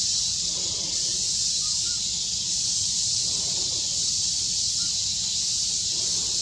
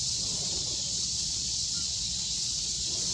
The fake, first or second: second